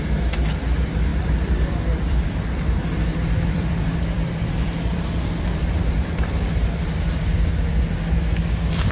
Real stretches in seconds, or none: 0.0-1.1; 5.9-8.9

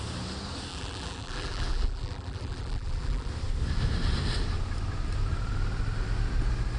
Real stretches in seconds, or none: 0.0-0.7; 3.3-6.8

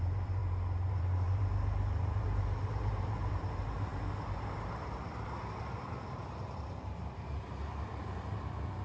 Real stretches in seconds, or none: 0.4-0.9